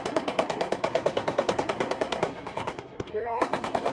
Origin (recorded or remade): remade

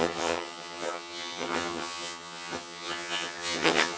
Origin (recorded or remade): remade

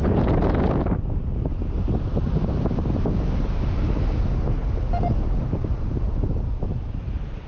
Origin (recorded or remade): recorded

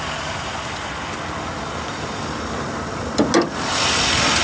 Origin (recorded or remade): recorded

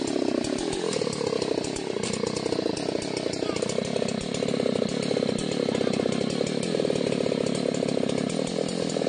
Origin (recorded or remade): recorded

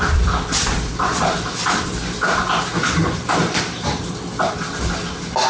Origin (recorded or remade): recorded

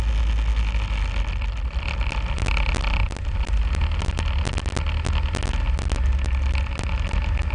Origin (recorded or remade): recorded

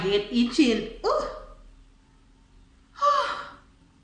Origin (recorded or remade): recorded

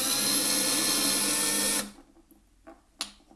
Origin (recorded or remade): recorded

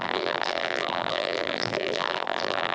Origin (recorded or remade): remade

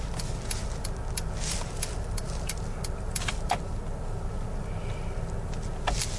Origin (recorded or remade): recorded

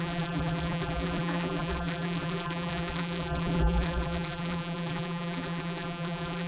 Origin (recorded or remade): remade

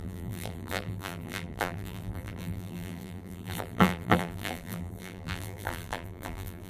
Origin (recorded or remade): remade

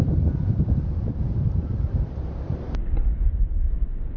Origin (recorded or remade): remade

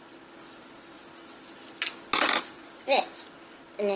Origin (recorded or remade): recorded